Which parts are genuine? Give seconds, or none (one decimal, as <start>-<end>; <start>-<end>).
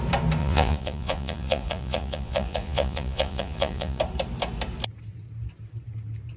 0.0-0.4; 4.0-6.4